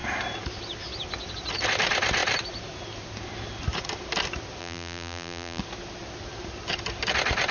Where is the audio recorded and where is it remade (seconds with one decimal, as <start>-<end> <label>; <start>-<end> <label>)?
0.0-4.6 recorded; 4.6-5.6 remade; 5.6-7.5 recorded